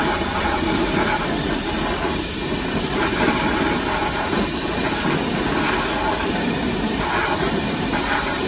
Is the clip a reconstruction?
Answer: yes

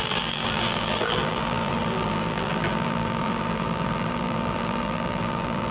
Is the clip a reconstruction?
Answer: yes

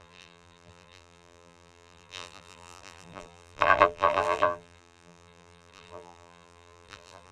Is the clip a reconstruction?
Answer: yes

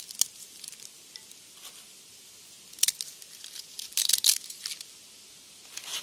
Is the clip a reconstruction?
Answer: no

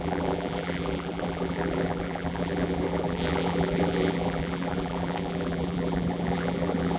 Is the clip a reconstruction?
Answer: yes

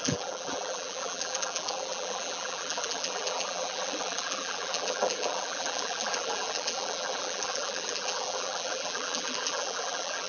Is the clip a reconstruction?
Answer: yes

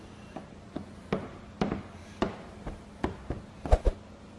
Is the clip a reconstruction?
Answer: no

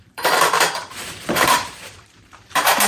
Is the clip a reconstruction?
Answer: yes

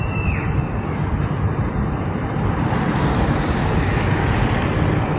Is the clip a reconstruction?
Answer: no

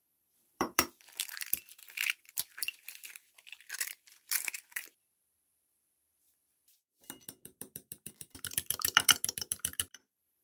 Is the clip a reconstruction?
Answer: yes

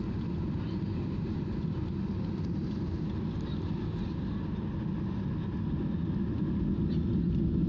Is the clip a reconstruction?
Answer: no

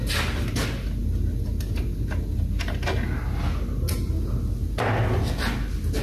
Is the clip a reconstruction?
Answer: no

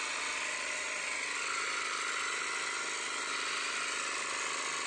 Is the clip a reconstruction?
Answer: no